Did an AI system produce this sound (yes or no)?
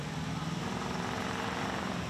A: no